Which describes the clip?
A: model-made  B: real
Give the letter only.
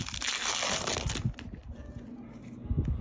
B